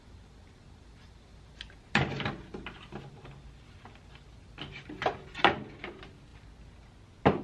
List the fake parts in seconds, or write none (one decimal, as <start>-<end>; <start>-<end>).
none